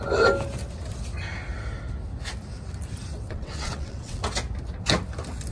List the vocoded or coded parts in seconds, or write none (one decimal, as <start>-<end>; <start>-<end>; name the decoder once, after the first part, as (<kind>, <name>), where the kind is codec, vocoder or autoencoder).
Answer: 3.3-4.2 (vocoder, WaveNeXt)